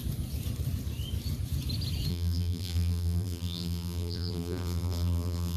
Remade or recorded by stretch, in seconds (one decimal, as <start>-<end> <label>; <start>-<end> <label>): 0.0-2.1 recorded; 2.1-5.6 remade